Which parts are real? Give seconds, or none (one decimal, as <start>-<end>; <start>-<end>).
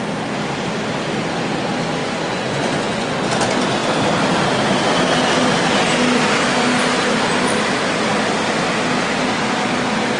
0.0-2.0; 3.1-10.2